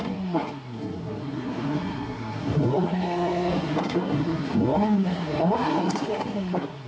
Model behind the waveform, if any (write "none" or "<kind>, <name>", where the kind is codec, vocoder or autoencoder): codec, SNAC